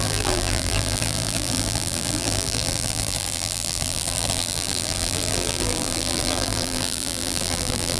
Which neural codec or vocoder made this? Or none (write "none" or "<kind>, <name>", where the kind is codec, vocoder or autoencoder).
vocoder, BigVGAN v2